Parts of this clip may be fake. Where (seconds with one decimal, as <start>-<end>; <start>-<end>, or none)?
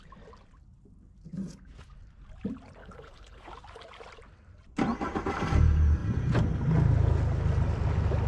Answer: 2.8-3.5